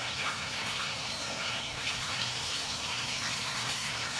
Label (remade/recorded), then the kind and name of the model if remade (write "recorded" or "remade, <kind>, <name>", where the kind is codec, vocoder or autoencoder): remade, codec, SNAC